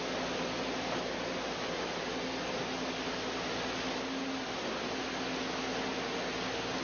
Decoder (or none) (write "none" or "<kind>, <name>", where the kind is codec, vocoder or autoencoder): none